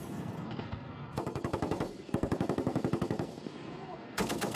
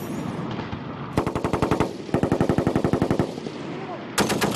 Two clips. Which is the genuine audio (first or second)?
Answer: second